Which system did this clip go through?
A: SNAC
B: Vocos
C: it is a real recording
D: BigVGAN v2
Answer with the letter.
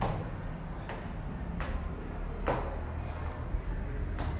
C